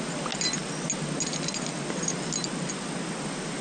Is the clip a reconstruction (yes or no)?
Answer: no